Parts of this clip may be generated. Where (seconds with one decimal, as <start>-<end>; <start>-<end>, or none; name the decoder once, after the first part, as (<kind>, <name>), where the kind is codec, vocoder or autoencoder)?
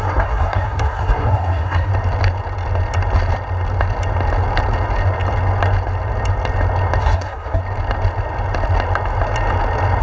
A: 0.0-1.9 (codec, SNAC); 7.0-7.6